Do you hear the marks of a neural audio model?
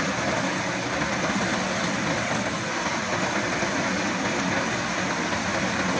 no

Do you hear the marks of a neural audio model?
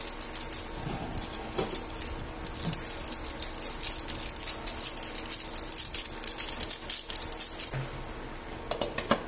no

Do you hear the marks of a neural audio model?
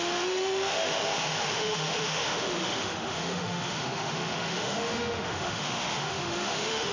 yes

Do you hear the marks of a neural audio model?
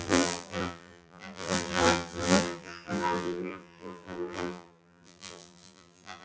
yes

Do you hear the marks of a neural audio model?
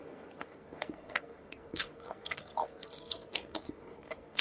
yes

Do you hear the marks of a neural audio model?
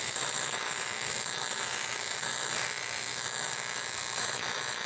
yes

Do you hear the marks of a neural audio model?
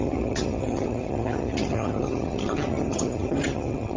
yes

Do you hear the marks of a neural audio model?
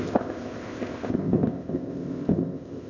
yes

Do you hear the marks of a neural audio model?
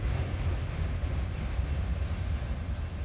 no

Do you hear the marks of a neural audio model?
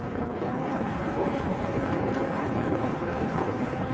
yes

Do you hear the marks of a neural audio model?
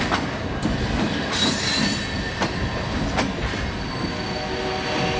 no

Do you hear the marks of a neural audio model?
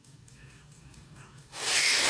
yes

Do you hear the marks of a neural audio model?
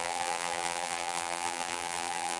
yes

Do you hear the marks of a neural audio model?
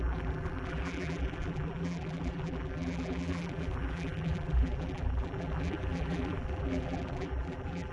yes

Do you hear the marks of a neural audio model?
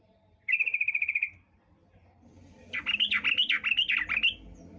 yes